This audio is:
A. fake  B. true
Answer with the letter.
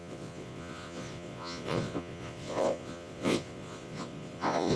A